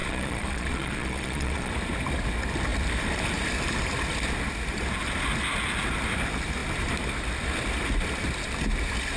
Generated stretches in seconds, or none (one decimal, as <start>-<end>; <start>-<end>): 0.0-1.7